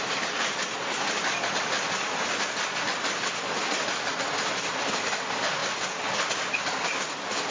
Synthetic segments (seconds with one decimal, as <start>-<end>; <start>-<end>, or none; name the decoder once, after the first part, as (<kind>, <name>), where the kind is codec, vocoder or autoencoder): none